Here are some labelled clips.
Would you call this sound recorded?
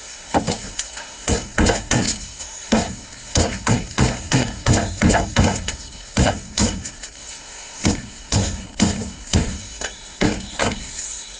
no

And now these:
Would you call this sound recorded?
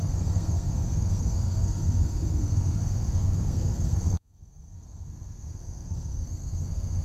no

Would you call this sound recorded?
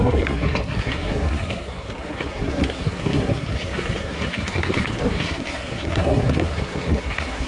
no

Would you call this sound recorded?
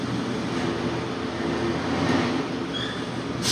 yes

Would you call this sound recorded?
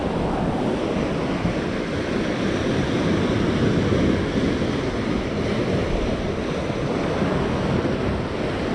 yes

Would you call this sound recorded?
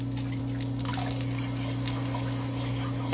yes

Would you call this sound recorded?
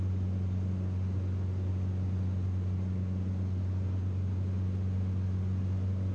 yes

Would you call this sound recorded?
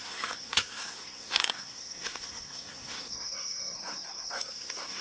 no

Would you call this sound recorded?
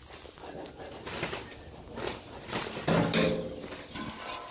yes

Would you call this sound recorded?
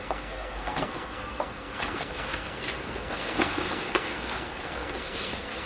no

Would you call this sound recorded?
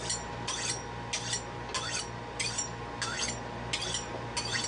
yes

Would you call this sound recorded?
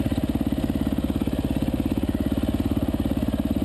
yes